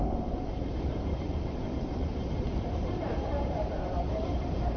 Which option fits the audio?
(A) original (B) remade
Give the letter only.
B